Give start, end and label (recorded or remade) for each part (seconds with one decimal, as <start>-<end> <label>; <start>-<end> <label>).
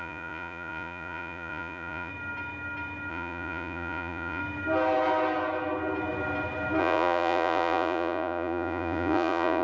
0.0-2.1 remade; 2.1-3.1 recorded; 3.1-4.4 remade; 4.4-6.8 recorded; 6.8-9.6 remade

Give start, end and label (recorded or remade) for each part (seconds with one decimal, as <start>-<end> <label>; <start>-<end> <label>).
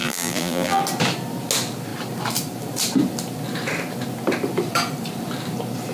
0.0-0.8 remade; 0.8-5.9 recorded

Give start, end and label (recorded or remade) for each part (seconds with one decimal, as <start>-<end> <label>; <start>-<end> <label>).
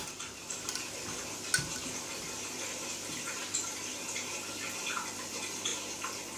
0.0-6.4 recorded